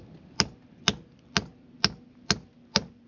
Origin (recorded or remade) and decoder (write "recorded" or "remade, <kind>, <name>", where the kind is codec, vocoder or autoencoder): recorded